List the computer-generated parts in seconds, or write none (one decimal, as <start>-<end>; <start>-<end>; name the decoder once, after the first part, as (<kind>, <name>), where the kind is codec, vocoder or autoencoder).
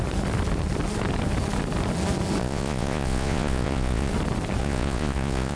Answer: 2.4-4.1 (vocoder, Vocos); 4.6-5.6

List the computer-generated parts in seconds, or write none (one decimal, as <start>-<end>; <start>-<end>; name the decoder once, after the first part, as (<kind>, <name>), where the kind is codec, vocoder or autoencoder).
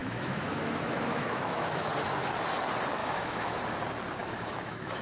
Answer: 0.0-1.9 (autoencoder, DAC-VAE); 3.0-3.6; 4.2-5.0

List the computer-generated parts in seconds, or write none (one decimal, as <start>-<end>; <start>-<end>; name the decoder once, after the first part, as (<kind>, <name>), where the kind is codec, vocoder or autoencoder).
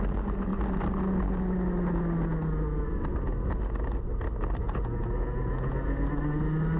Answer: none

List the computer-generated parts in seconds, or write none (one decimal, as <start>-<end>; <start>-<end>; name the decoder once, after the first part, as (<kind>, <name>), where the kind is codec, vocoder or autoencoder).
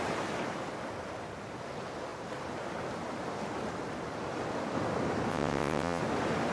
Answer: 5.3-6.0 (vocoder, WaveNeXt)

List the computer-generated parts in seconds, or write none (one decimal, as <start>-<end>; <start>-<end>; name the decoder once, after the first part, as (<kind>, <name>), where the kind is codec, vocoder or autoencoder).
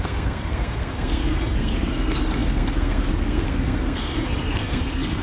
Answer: 0.0-5.2 (codec, SNAC)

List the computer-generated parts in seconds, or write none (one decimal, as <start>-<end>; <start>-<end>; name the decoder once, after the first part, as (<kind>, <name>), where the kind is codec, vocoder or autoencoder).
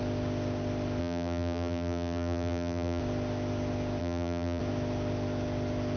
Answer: 1.0-3.0 (vocoder, BigVGAN v2); 4.0-4.6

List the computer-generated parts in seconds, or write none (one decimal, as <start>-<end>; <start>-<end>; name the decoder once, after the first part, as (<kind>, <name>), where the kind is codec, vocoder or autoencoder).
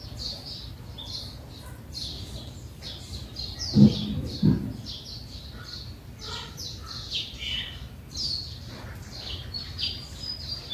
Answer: none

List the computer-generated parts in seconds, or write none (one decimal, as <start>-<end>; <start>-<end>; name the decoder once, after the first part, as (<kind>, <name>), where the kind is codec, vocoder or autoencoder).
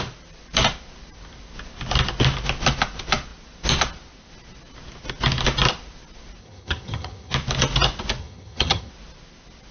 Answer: 6.4-7.3 (vocoder, HiFi-GAN); 8.2-8.9